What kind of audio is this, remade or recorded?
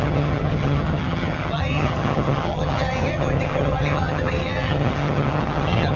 remade